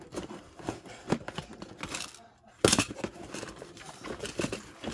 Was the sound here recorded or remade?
recorded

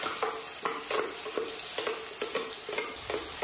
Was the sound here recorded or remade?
recorded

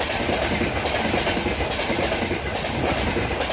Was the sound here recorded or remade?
recorded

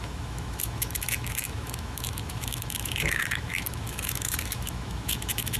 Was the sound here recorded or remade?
remade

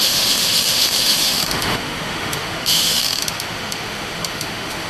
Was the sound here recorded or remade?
remade